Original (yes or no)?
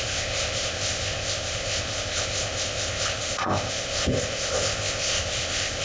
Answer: no